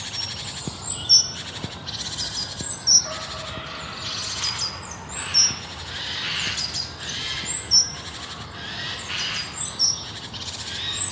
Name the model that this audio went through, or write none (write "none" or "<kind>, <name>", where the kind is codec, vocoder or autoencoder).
none